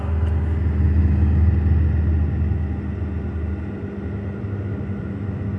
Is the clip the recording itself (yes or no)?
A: yes